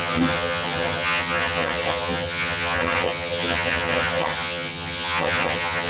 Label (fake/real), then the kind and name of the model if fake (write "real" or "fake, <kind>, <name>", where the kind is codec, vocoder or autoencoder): fake, vocoder, HiFi-GAN